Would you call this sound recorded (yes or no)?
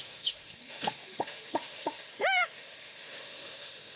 no